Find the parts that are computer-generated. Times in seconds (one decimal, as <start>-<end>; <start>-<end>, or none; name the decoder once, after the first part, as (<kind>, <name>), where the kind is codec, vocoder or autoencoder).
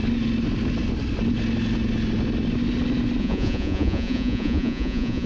3.2-5.3 (vocoder, Vocos)